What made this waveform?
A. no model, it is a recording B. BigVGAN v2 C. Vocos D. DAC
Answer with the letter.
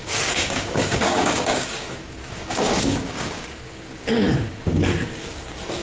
D